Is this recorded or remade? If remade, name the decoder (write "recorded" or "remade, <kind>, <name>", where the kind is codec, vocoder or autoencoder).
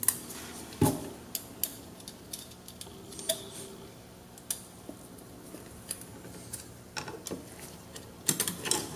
recorded